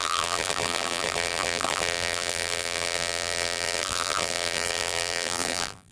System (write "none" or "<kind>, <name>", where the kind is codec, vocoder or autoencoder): vocoder, BigVGAN v2